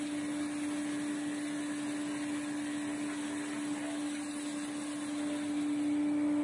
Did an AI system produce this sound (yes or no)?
no